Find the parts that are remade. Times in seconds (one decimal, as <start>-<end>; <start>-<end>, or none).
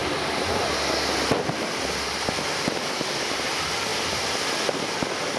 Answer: none